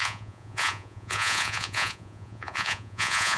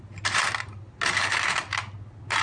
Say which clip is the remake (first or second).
first